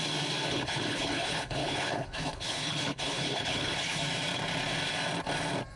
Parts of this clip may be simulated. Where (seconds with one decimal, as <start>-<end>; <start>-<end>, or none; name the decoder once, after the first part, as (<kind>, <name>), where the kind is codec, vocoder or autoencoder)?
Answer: 0.5-4.0 (codec, HILCodec)